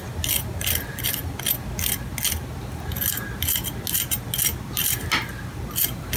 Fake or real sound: real